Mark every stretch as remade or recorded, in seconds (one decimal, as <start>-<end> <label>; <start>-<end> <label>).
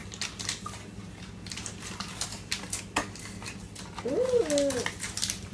0.0-5.5 recorded